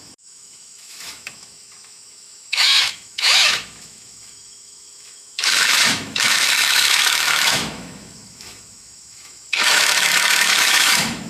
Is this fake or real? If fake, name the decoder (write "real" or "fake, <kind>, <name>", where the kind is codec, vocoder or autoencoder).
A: fake, autoencoder, DAC-VAE